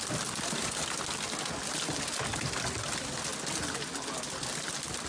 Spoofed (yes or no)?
no